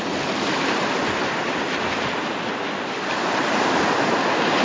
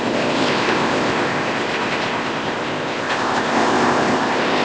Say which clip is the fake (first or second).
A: second